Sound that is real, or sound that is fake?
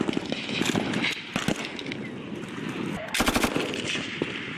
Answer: real